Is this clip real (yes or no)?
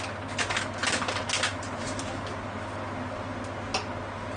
yes